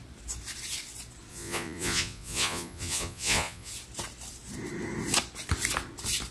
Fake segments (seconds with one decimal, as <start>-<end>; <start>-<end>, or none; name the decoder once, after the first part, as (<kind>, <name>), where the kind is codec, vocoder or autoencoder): 1.3-3.7 (vocoder, Vocos)